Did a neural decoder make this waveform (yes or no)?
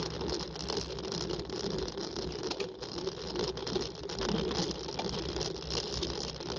no